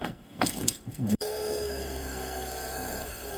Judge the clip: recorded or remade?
remade